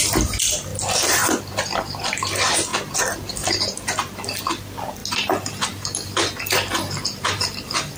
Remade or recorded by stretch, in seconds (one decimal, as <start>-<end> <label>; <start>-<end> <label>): 0.0-5.0 remade; 5.0-5.5 recorded; 5.5-8.0 remade